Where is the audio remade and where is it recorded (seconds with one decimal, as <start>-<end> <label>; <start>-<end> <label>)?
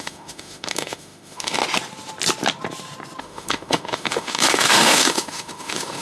0.0-1.6 remade; 1.6-3.2 recorded; 3.2-6.0 remade